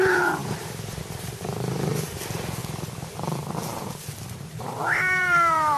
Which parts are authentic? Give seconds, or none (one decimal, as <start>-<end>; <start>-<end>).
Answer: 2.6-4.2